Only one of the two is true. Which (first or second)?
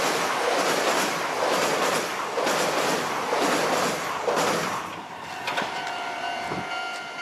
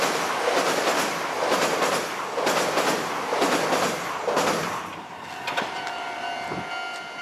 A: second